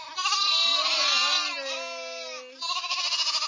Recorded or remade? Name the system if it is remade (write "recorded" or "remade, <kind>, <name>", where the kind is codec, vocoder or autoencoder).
recorded